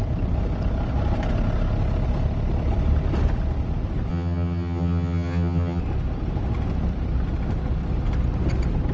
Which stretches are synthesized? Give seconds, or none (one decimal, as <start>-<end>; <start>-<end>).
4.1-5.8